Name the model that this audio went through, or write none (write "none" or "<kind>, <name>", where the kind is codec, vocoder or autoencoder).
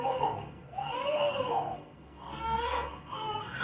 codec, SNAC